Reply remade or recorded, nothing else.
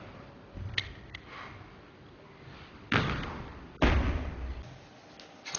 recorded